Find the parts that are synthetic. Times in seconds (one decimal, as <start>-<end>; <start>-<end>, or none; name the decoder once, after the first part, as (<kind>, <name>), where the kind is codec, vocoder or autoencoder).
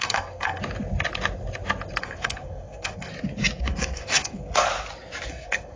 0.0-0.6 (codec, SNAC); 2.0-3.1; 3.6-4.7; 5.3-5.8